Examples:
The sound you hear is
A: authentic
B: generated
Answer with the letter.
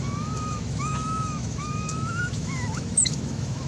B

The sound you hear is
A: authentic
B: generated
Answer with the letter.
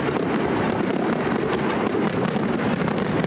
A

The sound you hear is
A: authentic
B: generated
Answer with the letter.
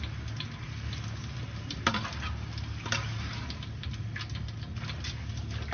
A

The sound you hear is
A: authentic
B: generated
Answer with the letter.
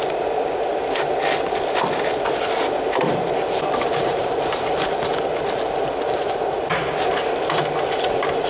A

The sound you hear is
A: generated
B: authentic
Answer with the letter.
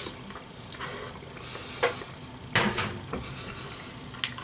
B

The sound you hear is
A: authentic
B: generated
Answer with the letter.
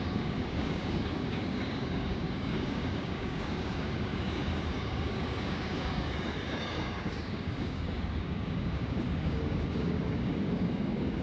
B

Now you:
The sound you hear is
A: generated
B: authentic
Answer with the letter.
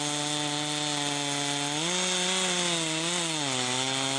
B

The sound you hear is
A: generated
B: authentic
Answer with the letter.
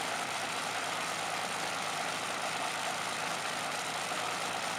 B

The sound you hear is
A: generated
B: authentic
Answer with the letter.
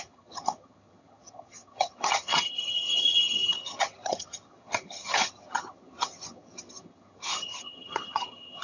A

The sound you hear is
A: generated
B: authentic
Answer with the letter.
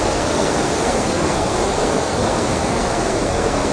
A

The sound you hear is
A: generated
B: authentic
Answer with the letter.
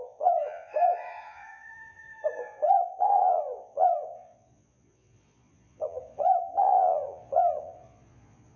A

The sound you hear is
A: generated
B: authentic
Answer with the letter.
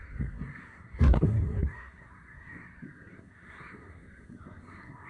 A